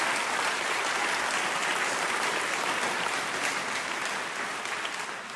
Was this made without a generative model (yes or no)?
yes